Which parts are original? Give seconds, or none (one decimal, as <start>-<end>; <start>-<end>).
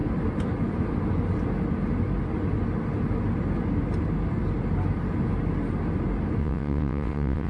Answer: 0.0-6.4